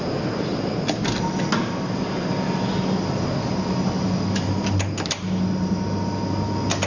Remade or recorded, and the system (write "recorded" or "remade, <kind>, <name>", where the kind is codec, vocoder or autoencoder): recorded